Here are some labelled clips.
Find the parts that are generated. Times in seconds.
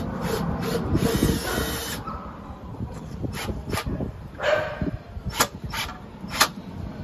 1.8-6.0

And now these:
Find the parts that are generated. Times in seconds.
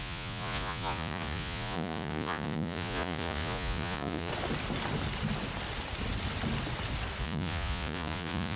0.0-4.3; 7.2-8.6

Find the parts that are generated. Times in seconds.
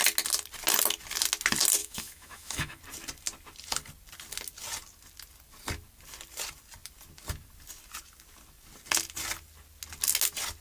1.8-2.8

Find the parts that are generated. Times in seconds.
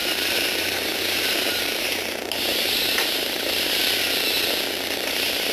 0.0-3.8; 5.1-5.5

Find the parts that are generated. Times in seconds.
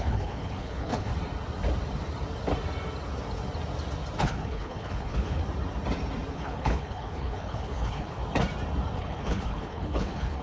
0.0-1.1; 4.2-5.4; 6.3-8.2; 9.0-10.4